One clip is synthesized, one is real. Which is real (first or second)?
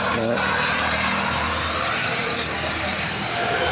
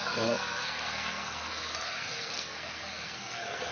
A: first